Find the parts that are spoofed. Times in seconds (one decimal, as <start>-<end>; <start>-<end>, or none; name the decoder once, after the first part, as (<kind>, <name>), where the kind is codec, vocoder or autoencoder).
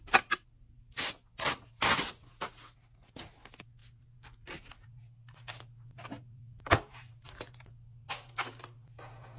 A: 3.8-4.7 (vocoder, BigVGAN v2); 5.2-7.1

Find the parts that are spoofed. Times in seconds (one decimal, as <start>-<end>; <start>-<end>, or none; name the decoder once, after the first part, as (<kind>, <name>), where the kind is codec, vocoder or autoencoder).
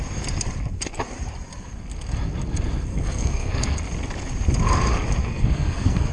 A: 2.9-3.8 (codec, SNAC); 5.2-6.1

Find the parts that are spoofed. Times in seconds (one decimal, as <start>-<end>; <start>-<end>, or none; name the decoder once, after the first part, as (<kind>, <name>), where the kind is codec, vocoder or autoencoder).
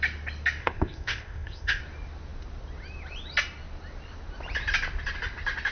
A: 0.6-1.8 (codec, ZipCodec)